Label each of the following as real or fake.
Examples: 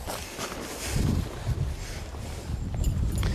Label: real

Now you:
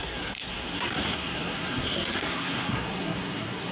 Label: fake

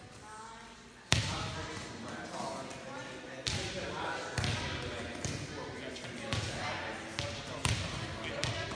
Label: real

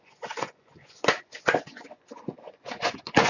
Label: fake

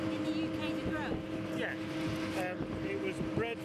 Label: real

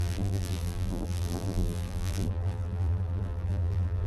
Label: fake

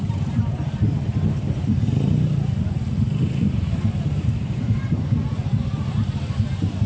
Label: fake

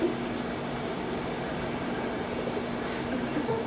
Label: real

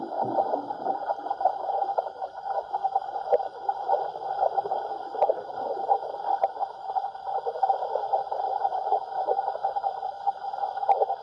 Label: real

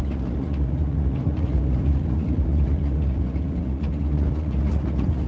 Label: fake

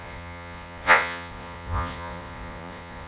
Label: fake